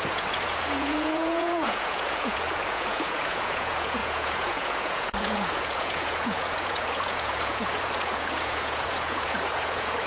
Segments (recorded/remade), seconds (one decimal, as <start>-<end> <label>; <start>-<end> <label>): 0.0-10.1 remade